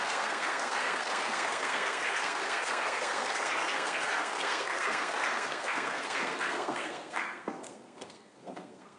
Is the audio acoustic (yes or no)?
no